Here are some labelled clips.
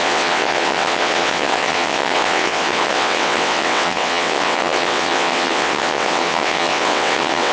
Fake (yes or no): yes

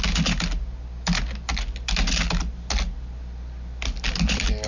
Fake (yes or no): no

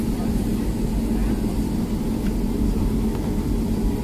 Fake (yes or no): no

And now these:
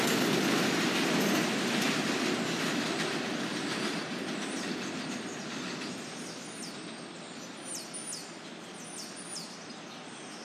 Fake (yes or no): no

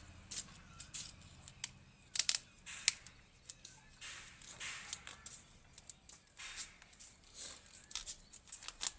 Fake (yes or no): no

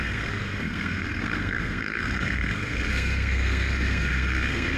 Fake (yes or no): yes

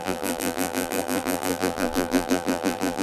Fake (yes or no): yes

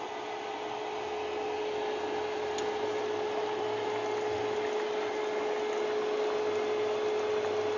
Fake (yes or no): no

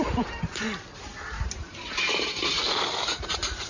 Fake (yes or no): yes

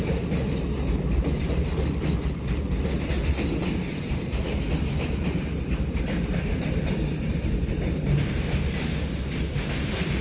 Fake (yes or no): no